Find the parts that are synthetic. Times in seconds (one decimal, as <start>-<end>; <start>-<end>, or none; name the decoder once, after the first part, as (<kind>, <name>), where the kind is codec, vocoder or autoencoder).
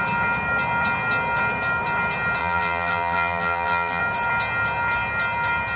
2.4-4.0 (vocoder, BigVGAN v2)